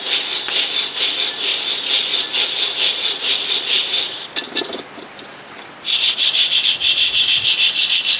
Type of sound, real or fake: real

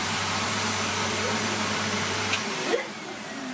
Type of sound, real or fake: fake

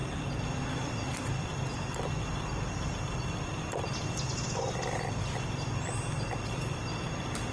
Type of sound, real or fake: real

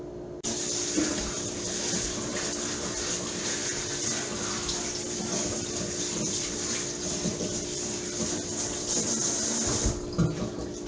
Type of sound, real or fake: real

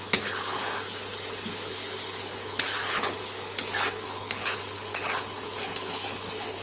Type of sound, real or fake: fake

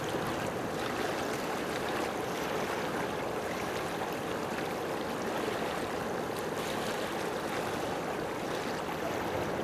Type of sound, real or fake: real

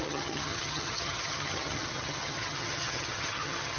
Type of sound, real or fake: fake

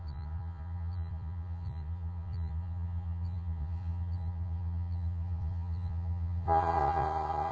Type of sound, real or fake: fake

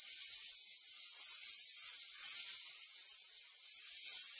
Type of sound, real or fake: real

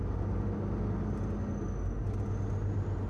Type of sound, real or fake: real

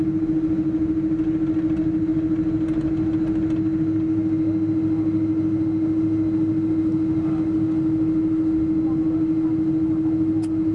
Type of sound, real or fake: real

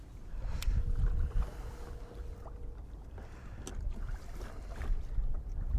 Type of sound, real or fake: real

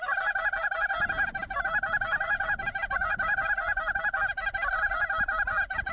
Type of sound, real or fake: real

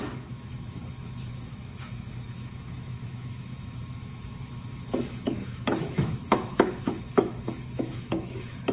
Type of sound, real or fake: fake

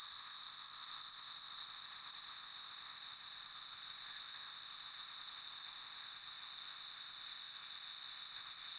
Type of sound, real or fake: fake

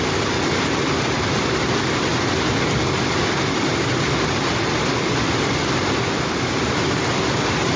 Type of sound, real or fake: real